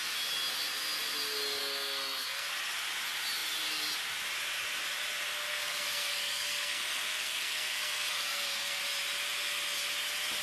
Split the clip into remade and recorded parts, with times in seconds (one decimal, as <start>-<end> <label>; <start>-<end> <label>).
0.0-1.6 recorded; 1.6-2.5 remade; 2.5-5.5 recorded; 5.5-8.8 remade; 8.8-10.4 recorded